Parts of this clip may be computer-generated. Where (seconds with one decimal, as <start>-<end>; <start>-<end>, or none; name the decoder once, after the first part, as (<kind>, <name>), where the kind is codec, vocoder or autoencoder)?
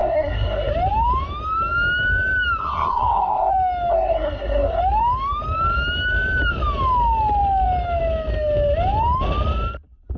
0.0-0.7 (codec, SNAC); 2.6-3.5; 3.9-4.8